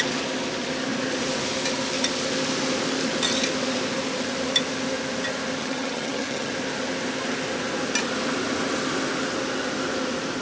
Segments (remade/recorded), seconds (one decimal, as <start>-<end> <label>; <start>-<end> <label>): 0.0-5.6 recorded; 5.6-6.5 remade; 6.5-10.4 recorded